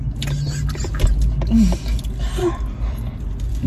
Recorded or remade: recorded